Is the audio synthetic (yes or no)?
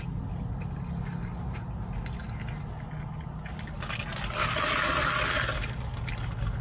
no